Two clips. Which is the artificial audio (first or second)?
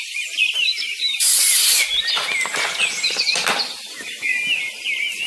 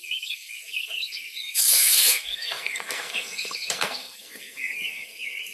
second